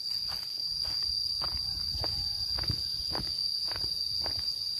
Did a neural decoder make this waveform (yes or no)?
no